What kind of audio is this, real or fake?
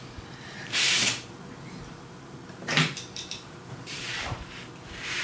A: fake